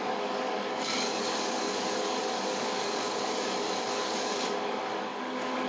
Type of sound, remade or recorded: remade